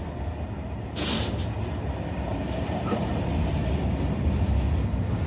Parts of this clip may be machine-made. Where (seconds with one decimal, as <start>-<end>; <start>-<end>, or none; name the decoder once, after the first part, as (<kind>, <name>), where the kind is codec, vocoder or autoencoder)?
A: 2.3-3.1 (vocoder, BigVGAN v2)

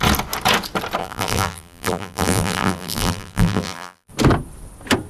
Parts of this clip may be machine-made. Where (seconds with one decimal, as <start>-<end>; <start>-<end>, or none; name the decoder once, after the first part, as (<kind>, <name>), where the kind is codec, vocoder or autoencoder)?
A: 1.0-4.1 (vocoder, BigVGAN v2)

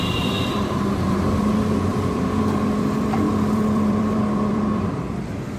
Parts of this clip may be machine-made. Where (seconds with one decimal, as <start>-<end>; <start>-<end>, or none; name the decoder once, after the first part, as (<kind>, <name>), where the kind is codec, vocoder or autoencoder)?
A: 0.0-5.6 (vocoder, BigVGAN v2)

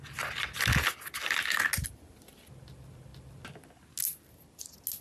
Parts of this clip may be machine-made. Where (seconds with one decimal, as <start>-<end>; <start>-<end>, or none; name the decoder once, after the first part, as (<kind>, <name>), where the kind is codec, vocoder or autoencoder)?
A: none